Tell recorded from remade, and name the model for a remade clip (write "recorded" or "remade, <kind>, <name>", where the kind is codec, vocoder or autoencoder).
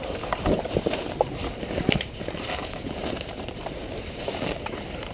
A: remade, vocoder, BigVGAN v2